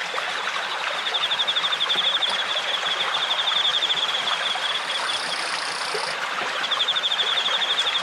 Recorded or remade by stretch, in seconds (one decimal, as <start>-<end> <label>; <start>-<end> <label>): 0.0-3.7 recorded; 3.7-6.0 remade; 6.0-8.0 recorded